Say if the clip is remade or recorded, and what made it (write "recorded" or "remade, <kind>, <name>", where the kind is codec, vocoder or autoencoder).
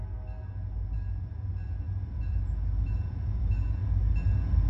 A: recorded